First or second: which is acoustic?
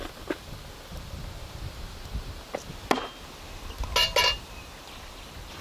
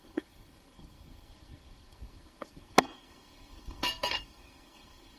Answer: first